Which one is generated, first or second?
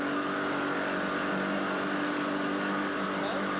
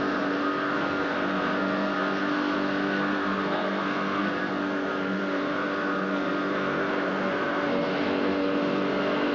second